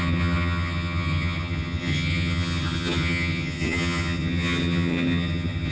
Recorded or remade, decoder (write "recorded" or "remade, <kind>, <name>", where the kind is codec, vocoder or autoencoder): remade, vocoder, HiFi-GAN